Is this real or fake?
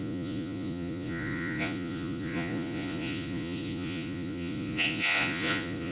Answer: fake